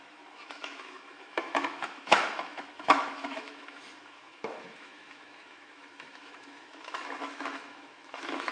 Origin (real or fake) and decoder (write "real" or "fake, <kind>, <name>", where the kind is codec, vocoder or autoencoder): fake, autoencoder, DAC-VAE